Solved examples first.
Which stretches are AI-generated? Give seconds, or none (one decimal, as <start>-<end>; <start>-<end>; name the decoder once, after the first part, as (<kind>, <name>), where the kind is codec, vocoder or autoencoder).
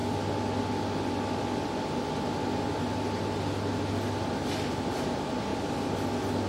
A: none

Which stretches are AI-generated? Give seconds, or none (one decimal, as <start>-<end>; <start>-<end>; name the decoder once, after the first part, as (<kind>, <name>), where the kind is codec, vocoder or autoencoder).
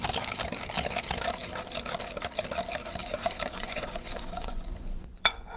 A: 3.0-5.6 (vocoder, Vocos)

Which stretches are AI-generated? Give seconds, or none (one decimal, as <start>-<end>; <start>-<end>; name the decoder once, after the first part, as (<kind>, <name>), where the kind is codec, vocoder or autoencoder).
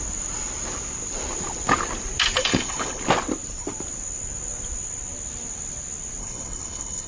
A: 2.4-3.0 (codec, HILCodec); 6.2-7.1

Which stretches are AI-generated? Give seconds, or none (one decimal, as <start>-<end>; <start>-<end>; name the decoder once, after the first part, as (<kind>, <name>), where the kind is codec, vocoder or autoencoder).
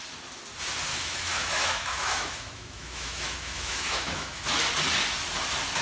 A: 0.9-4.4 (autoencoder, DAC-VAE)